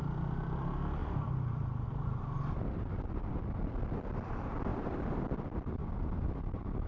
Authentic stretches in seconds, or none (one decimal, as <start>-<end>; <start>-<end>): 0.0-1.0; 3.3-4.7; 5.2-5.8